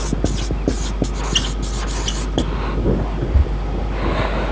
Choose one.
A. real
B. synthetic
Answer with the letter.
A